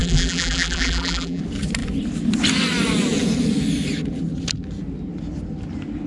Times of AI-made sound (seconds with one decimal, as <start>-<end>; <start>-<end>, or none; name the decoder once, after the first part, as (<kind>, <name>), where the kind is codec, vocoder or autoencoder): 0.0-1.4 (vocoder, BigVGAN v2)